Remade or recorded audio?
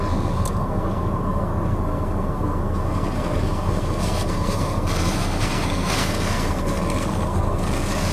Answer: remade